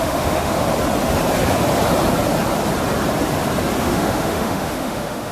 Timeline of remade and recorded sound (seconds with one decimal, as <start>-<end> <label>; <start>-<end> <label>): 0.0-0.6 remade; 0.6-3.8 recorded; 3.8-5.3 remade